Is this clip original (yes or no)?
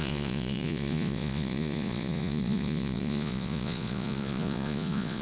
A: no